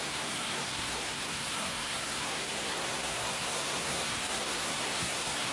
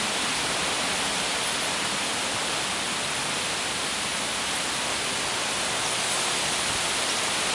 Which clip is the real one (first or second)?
second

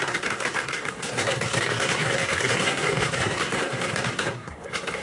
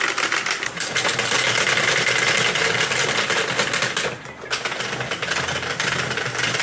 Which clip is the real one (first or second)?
second